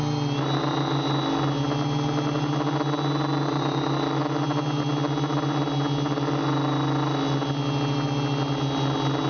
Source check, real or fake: real